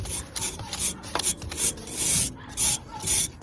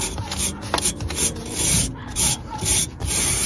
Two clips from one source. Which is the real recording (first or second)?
second